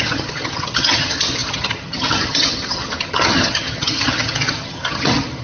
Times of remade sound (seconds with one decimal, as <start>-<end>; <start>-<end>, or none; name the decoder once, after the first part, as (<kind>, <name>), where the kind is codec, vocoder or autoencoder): 0.0-5.4 (vocoder, HiFi-GAN)